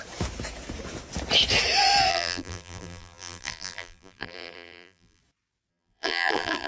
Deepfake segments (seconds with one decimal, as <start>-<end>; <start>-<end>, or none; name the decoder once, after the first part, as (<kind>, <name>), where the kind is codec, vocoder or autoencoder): 2.1-5.2 (vocoder, BigVGAN v2); 5.7-6.7